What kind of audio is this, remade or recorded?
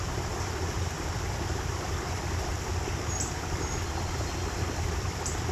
remade